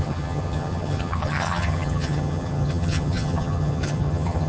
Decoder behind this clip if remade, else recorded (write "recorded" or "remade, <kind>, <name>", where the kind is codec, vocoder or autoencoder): remade, vocoder, HiFi-GAN